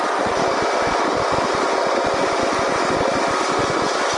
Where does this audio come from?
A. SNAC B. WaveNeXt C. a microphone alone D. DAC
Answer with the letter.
C